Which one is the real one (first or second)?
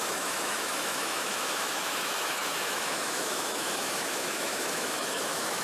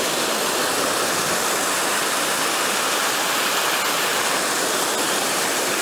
second